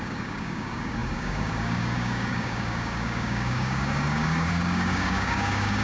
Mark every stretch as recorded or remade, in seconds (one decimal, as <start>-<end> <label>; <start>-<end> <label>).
0.0-5.8 remade